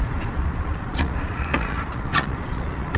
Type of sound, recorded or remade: remade